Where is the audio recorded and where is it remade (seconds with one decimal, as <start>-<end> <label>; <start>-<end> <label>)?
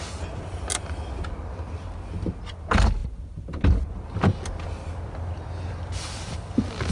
0.0-6.9 recorded